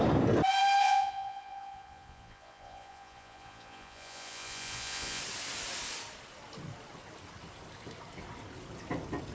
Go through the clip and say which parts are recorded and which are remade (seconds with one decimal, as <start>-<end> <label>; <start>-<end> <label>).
0.0-0.8 recorded; 0.8-5.2 remade; 5.2-9.3 recorded